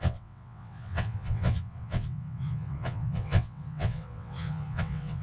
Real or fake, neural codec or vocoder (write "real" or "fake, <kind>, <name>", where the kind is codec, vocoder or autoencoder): fake, vocoder, WaveNeXt